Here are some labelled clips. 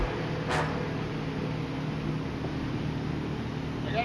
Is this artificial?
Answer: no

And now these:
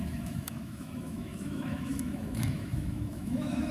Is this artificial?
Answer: yes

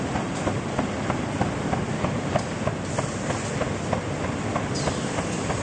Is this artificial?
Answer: no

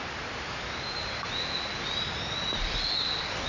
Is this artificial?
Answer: no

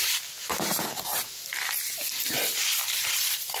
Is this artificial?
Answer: no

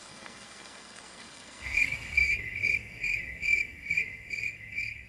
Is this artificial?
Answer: yes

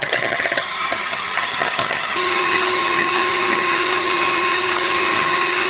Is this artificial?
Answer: yes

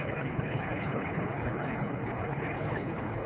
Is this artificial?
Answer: yes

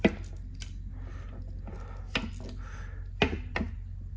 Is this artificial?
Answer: no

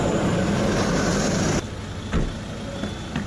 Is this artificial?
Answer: no